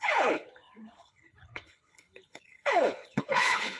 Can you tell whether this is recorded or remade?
remade